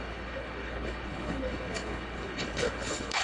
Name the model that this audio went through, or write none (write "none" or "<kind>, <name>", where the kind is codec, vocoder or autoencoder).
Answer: codec, HILCodec